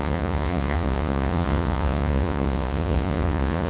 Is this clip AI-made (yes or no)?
yes